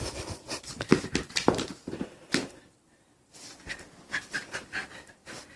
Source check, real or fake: fake